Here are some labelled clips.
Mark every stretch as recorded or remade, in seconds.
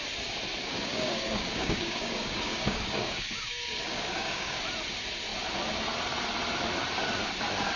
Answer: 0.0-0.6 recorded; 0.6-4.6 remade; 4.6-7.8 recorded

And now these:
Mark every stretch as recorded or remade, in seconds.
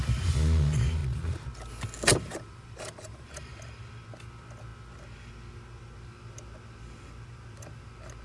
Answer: 0.0-2.1 recorded; 2.1-3.5 remade; 3.5-8.2 recorded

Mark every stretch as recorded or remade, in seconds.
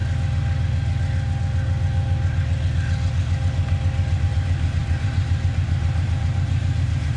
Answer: 0.0-4.2 recorded; 4.2-7.2 remade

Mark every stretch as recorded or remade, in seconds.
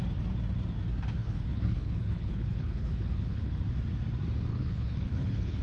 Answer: 0.0-1.2 recorded; 1.2-3.6 remade; 3.6-4.5 recorded; 4.5-5.6 remade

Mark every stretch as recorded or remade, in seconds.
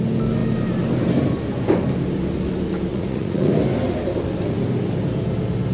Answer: 0.0-2.9 recorded; 2.9-3.5 remade; 3.5-5.7 recorded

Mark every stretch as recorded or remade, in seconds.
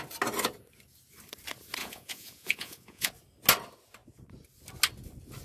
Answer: 0.0-1.8 recorded; 1.8-3.1 remade; 3.1-5.4 recorded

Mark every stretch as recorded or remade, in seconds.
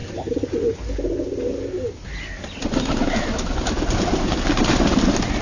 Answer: 0.0-5.4 recorded